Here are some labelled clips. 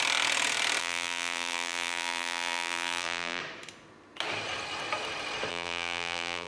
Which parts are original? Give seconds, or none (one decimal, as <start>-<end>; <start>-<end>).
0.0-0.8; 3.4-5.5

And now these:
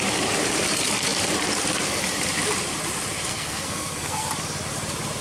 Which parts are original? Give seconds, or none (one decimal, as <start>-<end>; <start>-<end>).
0.0-3.3; 4.3-5.2

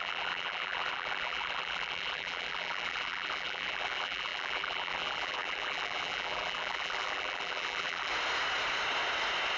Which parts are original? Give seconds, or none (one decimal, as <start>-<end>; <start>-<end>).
8.1-9.6

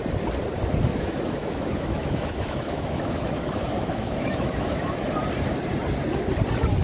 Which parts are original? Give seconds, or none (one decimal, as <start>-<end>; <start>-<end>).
0.0-0.9; 5.0-6.8